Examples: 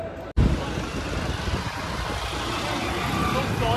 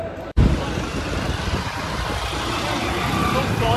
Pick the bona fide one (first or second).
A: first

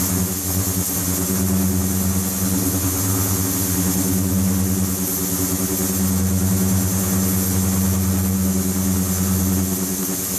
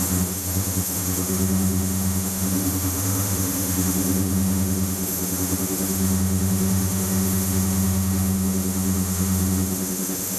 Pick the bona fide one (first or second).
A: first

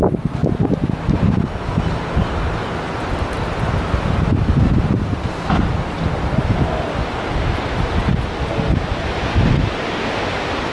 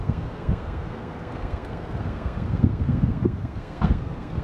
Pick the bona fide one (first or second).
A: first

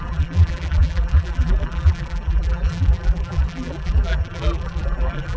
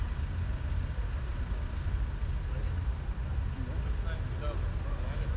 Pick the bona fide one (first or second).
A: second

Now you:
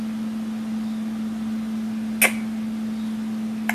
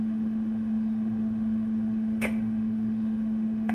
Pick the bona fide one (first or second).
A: first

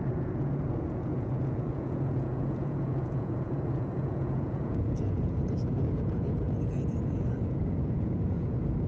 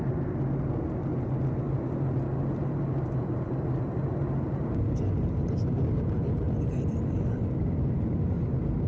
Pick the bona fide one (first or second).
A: second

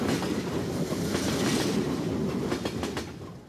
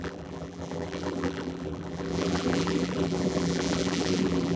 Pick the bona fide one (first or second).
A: first